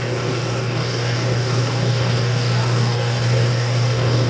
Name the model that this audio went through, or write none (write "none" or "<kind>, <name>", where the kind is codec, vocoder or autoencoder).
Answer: codec, DAC